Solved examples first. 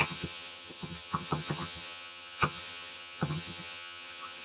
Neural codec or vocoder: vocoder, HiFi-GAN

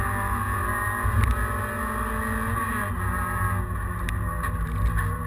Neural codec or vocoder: none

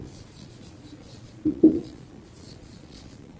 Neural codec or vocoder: vocoder, Vocos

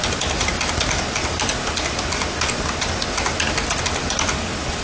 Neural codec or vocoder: none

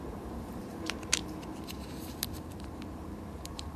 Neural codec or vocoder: vocoder, BigVGAN v2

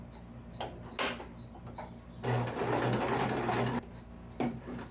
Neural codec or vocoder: none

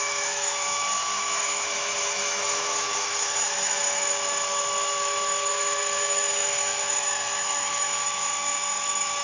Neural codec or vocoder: autoencoder, DAC-VAE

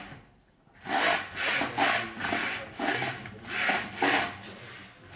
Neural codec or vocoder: none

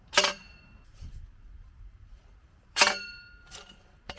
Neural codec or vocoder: vocoder, BigVGAN v2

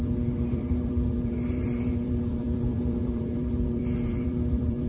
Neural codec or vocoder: vocoder, BigVGAN v2